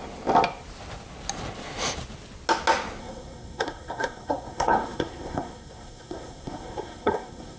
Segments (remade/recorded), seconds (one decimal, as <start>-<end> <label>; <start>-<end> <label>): 0.0-3.0 recorded; 3.0-7.6 remade